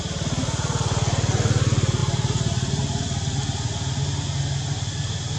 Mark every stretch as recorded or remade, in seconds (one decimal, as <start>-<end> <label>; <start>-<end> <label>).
0.0-5.4 recorded

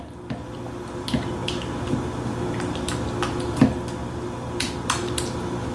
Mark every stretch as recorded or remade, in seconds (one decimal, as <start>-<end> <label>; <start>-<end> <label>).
0.0-5.7 recorded

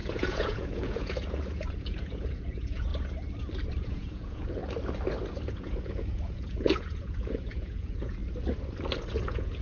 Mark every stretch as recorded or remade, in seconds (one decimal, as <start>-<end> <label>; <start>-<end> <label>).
0.0-2.9 remade; 2.9-3.7 recorded; 3.7-4.6 remade; 4.6-5.5 recorded; 5.5-8.2 remade; 8.2-9.2 recorded; 9.2-9.6 remade

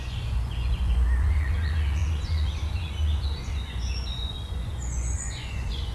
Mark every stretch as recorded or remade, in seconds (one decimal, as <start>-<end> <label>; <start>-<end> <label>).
0.0-5.9 remade

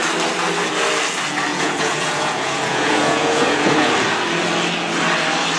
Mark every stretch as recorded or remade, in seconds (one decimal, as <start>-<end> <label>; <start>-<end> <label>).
0.0-1.5 recorded; 1.5-3.9 remade; 3.9-5.6 recorded

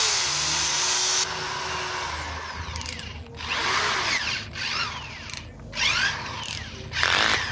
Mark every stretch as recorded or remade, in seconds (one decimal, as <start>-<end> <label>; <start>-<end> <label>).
0.0-7.5 recorded